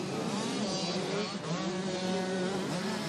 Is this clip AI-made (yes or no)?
no